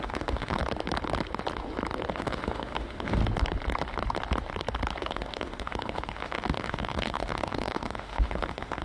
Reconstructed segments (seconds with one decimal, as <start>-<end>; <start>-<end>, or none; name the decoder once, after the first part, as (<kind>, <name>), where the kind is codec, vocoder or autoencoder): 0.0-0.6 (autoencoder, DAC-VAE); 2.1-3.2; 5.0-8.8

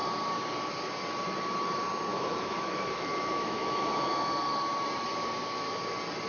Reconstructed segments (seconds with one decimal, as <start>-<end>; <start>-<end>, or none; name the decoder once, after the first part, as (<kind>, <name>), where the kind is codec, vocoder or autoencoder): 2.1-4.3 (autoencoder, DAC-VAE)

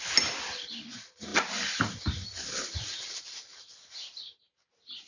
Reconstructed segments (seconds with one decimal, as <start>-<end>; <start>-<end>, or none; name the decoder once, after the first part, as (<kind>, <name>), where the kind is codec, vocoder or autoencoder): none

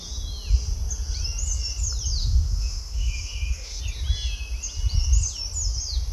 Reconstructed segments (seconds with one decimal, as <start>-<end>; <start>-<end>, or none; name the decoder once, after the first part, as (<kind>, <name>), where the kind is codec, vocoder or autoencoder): 2.2-3.8 (autoencoder, DAC-VAE)

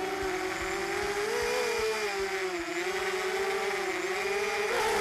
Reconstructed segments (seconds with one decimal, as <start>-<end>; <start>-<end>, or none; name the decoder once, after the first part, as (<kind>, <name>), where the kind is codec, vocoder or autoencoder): none

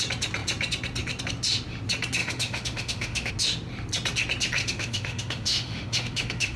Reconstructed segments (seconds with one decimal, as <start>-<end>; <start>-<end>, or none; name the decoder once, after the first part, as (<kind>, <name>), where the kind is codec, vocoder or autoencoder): 2.2-3.3 (autoencoder, DAC-VAE); 4.6-6.6

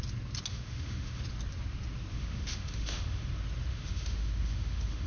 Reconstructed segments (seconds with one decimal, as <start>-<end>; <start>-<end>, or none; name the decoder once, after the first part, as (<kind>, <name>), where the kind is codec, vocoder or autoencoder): 0.5-1.2 (autoencoder, DAC-VAE); 2.1-3.3; 3.7-5.1